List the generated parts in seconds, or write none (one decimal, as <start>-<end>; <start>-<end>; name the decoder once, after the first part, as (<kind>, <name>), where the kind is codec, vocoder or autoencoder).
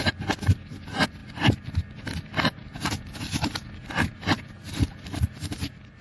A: none